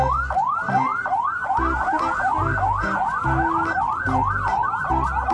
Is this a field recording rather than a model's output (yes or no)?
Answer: yes